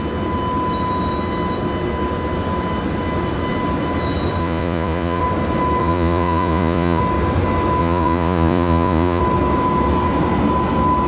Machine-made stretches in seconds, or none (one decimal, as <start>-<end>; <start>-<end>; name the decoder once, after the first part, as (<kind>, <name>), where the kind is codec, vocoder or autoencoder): 4.4-5.2 (vocoder, Vocos); 5.8-7.0; 7.8-9.2